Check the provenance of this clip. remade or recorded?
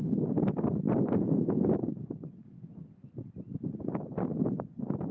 recorded